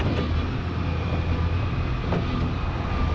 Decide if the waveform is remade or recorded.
recorded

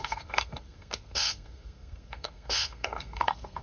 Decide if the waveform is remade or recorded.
remade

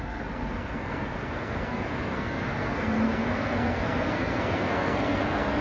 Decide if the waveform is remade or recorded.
remade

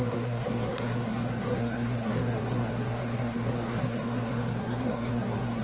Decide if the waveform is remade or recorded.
remade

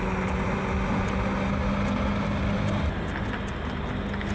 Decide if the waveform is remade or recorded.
recorded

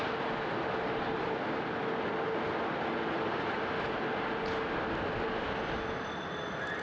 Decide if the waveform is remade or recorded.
recorded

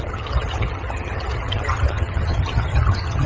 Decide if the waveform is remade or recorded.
remade